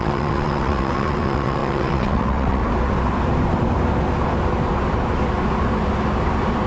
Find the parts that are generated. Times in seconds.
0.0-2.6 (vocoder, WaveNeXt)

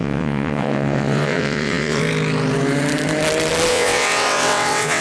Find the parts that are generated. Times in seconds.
0.0-2.0 (vocoder, WaveNeXt); 3.7-5.0

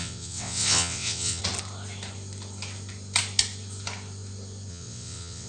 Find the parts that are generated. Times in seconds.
0.0-1.4 (vocoder, WaveNeXt); 4.7-5.5

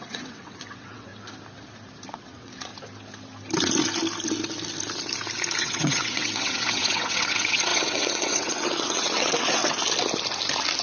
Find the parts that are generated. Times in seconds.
0.0-1.1 (vocoder, WaveNeXt); 2.1-2.7; 5.6-9.6

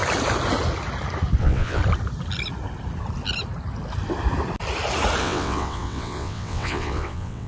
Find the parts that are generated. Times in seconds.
1.4-1.8 (vocoder, WaveNeXt); 5.2-7.5

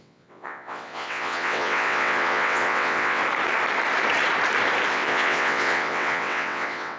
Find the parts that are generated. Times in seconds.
0.0-3.2 (vocoder, WaveNeXt); 4.9-7.0

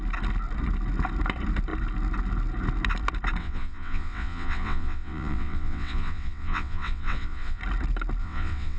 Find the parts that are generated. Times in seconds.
3.4-7.6 (vocoder, WaveNeXt); 8.2-8.8

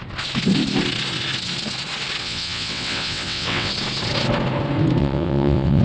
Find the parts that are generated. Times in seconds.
2.2-3.7 (vocoder, WaveNeXt); 5.0-5.8